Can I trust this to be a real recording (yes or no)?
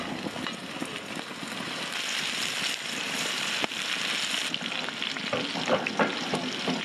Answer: yes